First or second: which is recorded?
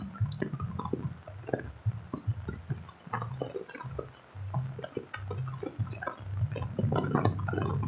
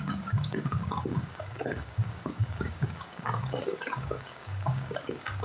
first